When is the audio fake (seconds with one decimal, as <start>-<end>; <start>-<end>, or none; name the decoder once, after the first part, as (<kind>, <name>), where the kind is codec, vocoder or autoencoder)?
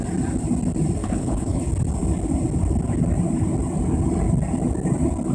1.0-1.6 (codec, HILCodec)